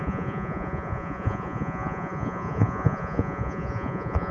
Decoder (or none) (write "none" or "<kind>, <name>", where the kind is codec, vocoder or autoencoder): vocoder, Vocos